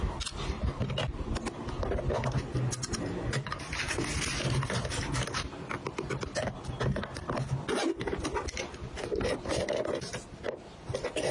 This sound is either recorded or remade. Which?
recorded